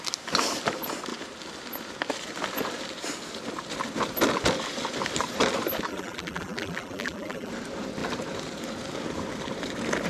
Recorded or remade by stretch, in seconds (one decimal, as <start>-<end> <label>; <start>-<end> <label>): 0.0-5.9 recorded; 5.9-7.5 remade; 7.5-10.1 recorded